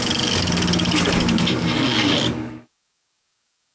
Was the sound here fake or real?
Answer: fake